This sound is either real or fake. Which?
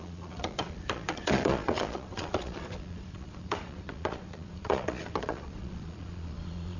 fake